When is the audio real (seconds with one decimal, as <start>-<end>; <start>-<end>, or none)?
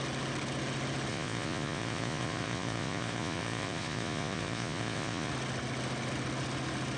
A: 0.0-1.1; 5.3-7.0